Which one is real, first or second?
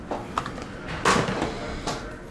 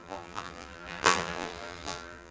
first